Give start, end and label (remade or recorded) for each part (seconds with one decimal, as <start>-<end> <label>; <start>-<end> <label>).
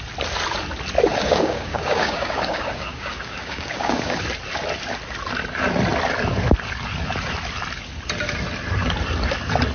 0.0-1.1 recorded; 1.1-4.2 remade; 4.2-9.7 recorded